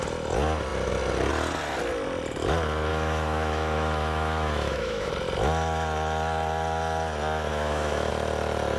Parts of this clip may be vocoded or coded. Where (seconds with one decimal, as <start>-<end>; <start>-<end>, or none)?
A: 2.9-5.1; 7.5-8.1